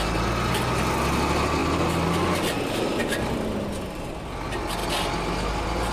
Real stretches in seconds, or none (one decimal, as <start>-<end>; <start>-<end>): 0.0-5.9